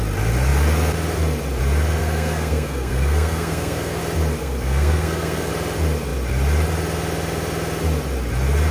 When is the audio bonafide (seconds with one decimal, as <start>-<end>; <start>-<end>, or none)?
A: 0.0-2.0; 4.0-4.4; 5.5-8.7